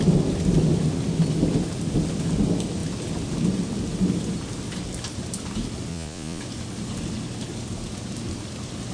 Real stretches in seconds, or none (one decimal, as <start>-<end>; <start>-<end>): 0.0-5.9; 6.4-8.9